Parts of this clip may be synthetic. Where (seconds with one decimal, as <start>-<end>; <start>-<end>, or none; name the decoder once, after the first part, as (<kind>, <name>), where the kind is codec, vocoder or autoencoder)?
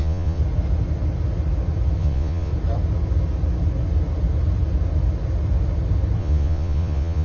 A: 0.0-0.4 (vocoder, Vocos); 2.0-2.5; 6.2-7.2